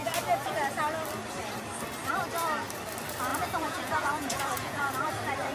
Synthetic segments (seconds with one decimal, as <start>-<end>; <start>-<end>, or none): 3.3-5.1